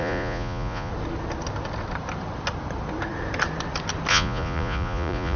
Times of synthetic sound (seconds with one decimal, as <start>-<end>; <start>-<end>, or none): 0.0-0.9; 4.1-5.4